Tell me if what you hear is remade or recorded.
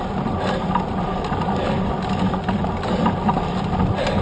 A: recorded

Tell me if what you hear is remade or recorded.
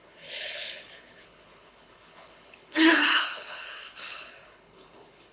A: remade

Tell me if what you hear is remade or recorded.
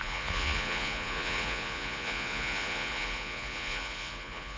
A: remade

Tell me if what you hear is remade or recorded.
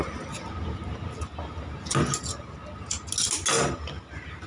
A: recorded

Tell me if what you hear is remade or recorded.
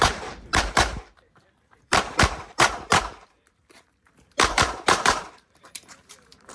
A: remade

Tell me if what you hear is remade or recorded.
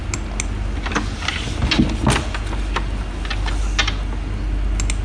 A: recorded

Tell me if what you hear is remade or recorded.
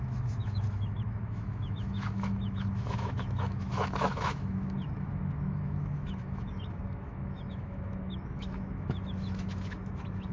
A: remade